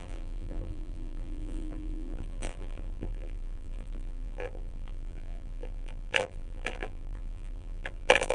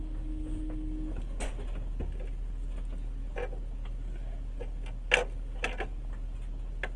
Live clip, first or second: second